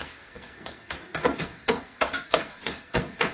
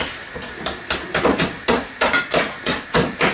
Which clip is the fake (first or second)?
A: first